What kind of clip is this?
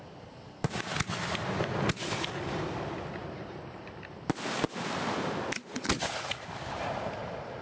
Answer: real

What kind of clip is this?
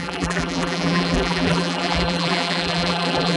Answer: fake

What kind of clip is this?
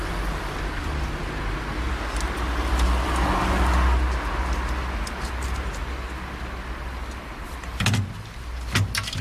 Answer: real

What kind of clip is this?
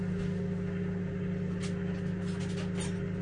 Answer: real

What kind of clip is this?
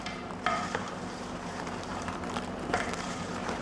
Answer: fake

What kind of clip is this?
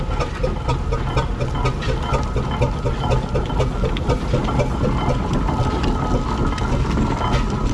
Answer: real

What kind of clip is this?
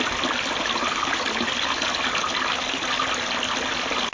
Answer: real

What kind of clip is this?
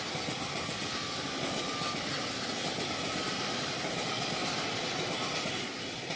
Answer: real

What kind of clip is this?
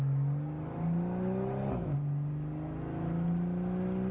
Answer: real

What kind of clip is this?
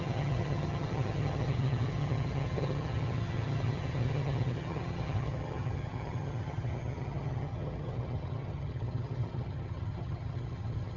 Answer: fake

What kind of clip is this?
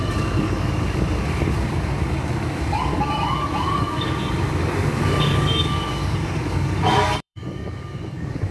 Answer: fake